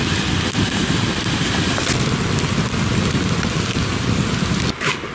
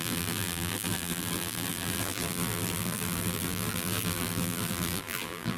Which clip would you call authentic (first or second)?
first